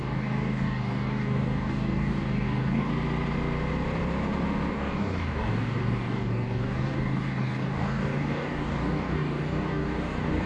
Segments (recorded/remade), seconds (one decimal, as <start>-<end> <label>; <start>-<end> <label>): 0.0-2.9 remade; 2.9-4.7 recorded; 4.7-10.5 remade